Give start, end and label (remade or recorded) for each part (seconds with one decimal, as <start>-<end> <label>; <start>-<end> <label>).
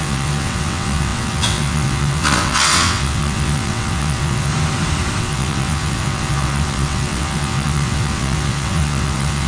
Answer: 0.0-4.5 remade; 4.5-5.2 recorded; 5.2-9.5 remade